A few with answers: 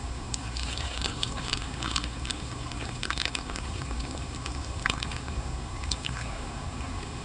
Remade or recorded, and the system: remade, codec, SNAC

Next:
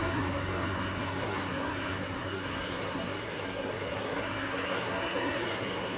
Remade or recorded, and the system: remade, codec, SNAC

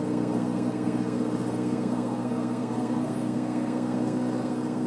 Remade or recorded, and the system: remade, codec, SNAC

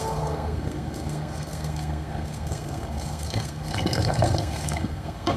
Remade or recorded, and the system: remade, codec, SNAC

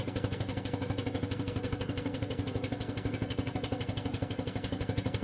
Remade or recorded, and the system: remade, codec, SNAC